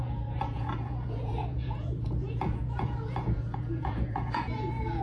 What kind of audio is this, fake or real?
fake